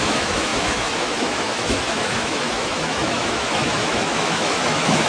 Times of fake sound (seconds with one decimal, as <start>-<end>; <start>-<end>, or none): 0.0-5.1